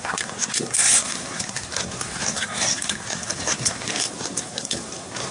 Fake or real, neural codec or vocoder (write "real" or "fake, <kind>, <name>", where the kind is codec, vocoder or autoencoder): fake, codec, SNAC